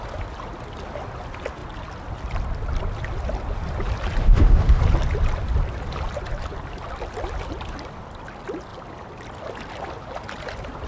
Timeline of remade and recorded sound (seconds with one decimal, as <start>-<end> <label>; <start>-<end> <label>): 0.0-4.2 recorded; 4.2-4.8 remade; 4.8-10.9 recorded